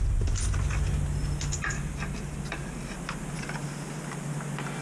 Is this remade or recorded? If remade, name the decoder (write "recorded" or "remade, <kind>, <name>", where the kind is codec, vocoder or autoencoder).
recorded